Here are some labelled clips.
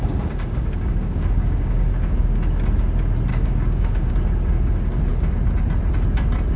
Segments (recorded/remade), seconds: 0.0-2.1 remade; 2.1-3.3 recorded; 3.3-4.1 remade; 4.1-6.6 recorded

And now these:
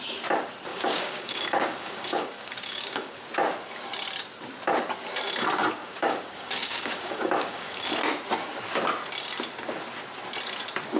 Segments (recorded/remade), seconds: 0.0-0.7 recorded; 0.7-3.2 remade; 3.2-5.8 recorded; 5.8-7.9 remade; 7.9-11.0 recorded

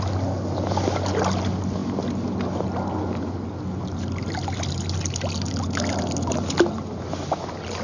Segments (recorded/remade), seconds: 0.0-7.8 recorded